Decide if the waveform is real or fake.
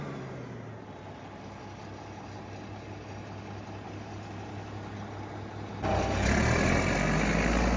real